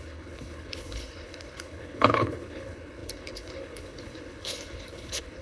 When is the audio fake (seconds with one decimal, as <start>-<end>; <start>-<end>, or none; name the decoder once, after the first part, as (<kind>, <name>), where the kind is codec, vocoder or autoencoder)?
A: 0.0-5.4 (codec, HILCodec)